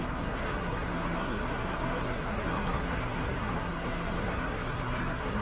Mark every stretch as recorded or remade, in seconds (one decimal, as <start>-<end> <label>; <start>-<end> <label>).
0.0-5.4 remade